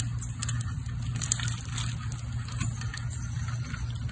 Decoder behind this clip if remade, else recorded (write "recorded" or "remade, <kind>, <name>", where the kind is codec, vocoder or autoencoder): recorded